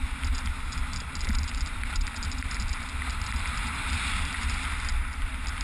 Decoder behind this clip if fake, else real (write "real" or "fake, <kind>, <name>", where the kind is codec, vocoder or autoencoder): real